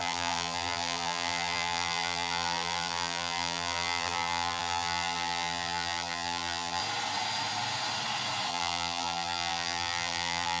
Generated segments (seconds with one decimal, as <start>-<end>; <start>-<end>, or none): 0.0-6.8; 8.5-10.6